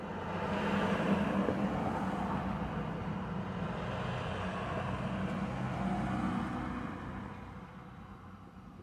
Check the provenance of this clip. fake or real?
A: real